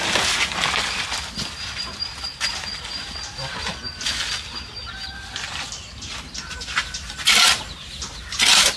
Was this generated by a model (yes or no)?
no